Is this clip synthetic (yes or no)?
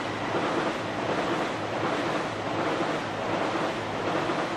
no